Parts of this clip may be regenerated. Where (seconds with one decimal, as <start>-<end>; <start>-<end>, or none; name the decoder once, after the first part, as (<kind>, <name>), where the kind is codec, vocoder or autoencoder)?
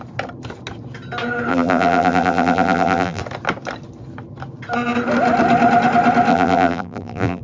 1.5-3.2 (vocoder, BigVGAN v2); 6.3-7.4